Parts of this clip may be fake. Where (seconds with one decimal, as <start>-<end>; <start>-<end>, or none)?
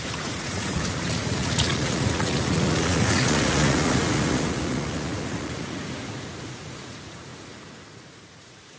0.0-7.3; 7.9-8.8